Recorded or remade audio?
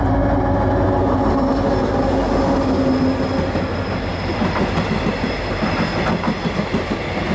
recorded